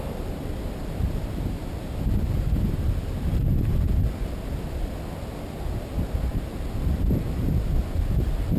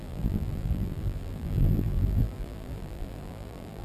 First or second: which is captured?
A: first